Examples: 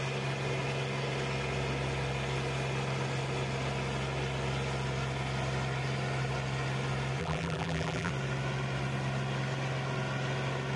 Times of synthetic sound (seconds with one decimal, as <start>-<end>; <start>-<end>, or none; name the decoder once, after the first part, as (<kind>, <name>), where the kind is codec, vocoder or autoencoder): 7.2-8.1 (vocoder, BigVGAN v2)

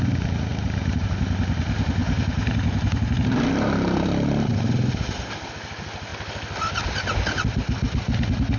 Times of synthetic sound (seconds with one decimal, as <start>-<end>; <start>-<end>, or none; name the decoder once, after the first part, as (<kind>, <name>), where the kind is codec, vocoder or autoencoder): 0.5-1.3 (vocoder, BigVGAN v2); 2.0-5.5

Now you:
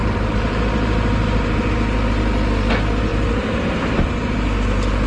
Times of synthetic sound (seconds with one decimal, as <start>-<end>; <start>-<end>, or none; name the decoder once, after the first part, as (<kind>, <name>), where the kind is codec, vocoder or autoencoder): 0.0-1.7 (vocoder, BigVGAN v2); 3.1-3.8

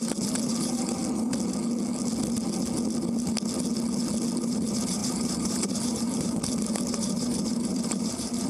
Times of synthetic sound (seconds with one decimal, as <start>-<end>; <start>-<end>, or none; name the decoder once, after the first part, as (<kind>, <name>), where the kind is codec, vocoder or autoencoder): 0.0-1.0 (vocoder, BigVGAN v2); 4.4-8.5

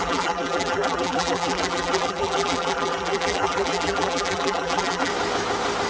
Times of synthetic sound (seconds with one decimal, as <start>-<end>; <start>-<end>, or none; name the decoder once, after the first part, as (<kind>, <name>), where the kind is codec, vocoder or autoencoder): 0.0-5.1 (vocoder, BigVGAN v2)

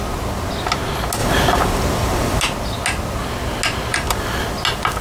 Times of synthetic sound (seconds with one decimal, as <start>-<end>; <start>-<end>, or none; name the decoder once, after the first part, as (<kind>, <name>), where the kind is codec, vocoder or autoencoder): 1.2-2.4 (vocoder, BigVGAN v2); 3.9-4.4

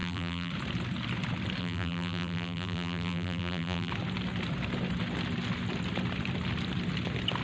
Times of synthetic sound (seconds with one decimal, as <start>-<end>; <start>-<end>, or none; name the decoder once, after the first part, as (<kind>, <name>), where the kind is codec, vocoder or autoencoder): 0.0-0.5 (vocoder, BigVGAN v2); 1.6-3.9